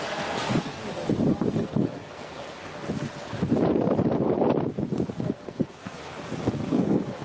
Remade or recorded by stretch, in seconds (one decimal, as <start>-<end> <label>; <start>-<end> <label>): 0.0-0.8 remade; 0.8-1.5 recorded; 1.5-2.7 remade; 2.7-5.1 recorded; 5.1-6.1 remade; 6.1-6.7 recorded; 6.7-7.2 remade